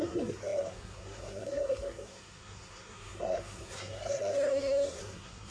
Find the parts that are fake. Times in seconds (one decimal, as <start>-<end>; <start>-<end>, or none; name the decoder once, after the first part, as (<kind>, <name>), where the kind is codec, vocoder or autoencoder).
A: 0.0-5.5 (codec, SNAC)